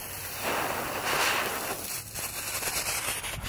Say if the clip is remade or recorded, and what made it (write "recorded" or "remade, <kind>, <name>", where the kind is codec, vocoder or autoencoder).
recorded